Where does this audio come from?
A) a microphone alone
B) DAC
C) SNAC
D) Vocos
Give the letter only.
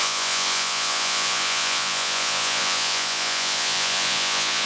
D